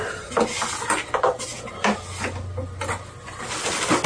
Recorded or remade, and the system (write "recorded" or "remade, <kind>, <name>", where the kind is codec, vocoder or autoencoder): recorded